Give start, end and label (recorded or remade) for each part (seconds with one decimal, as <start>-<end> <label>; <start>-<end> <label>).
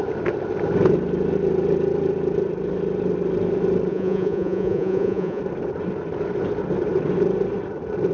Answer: 0.0-3.9 recorded; 3.9-5.4 remade; 5.4-8.1 recorded